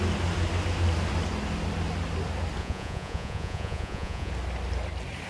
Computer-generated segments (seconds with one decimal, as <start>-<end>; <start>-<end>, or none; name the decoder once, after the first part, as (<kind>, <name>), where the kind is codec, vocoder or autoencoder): 2.6-4.3 (vocoder, Vocos)